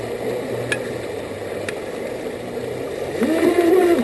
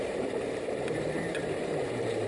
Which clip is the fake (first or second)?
second